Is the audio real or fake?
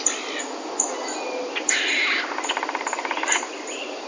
real